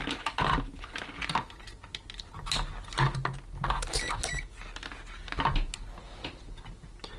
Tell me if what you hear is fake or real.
real